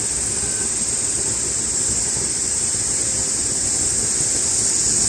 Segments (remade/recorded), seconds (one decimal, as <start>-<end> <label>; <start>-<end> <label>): 0.0-0.6 recorded; 0.6-3.7 remade; 3.7-5.1 recorded